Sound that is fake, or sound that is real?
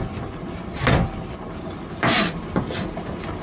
real